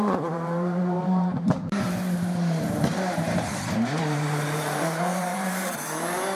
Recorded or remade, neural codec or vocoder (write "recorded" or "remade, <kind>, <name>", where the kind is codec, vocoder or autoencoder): remade, vocoder, BigVGAN v2